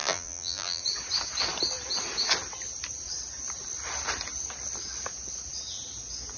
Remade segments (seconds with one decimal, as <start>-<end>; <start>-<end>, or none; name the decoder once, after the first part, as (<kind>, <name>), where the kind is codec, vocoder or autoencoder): 0.0-0.8 (vocoder, BigVGAN v2)